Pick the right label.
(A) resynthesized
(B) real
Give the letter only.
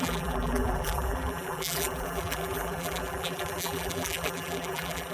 A